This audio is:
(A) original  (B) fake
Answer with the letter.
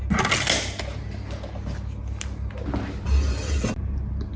A